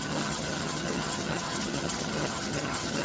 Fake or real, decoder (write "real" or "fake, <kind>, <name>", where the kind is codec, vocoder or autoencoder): fake, vocoder, HiFi-GAN